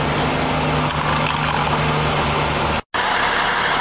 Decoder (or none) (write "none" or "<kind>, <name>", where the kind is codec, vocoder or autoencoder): none